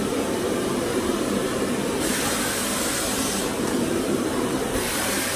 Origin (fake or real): fake